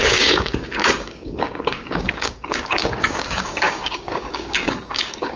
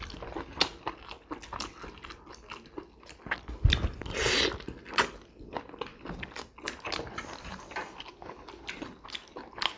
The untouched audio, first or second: second